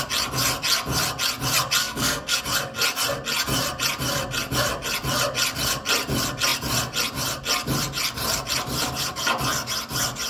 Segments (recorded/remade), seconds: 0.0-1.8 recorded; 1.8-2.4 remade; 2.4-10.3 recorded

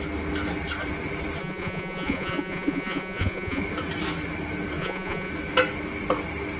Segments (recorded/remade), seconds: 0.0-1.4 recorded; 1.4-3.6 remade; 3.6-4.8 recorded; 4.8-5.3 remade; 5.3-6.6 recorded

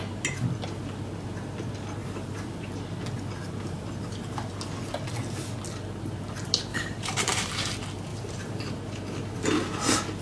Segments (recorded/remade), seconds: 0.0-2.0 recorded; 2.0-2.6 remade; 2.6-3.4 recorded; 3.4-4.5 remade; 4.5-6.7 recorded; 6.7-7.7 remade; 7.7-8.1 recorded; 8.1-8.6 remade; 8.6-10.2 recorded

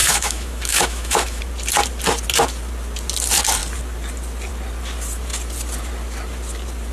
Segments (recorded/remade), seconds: 0.0-1.4 remade; 1.4-6.9 recorded

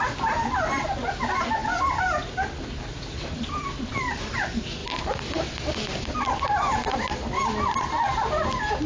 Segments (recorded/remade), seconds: 0.0-1.6 recorded; 1.6-4.2 remade; 4.2-4.8 recorded; 4.8-7.9 remade; 7.9-8.9 recorded

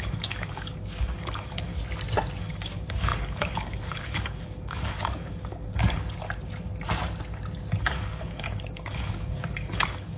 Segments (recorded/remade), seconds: 0.0-1.7 remade; 1.7-2.4 recorded; 2.4-6.0 remade; 6.0-7.8 recorded; 7.8-10.2 remade

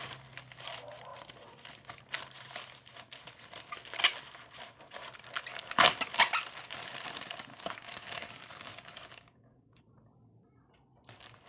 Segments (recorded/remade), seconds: 0.0-5.5 recorded; 5.5-6.2 remade; 6.2-7.5 recorded; 7.5-9.8 remade; 9.8-11.5 recorded

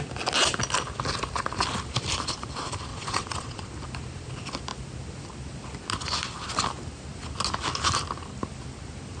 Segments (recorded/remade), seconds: 0.0-2.9 recorded; 2.9-3.7 remade; 3.7-9.2 recorded